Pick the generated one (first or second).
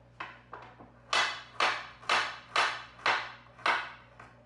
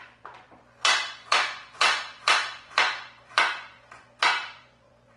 second